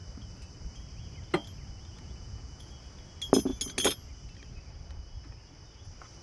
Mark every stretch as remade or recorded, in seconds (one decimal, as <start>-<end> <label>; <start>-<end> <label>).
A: 0.0-1.9 recorded; 1.9-2.7 remade; 2.7-6.2 recorded